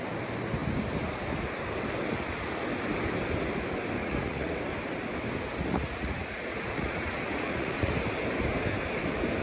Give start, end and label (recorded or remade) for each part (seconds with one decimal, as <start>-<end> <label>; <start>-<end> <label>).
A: 0.0-4.0 recorded; 4.0-4.6 remade; 4.6-5.7 recorded; 5.7-7.9 remade; 7.9-9.4 recorded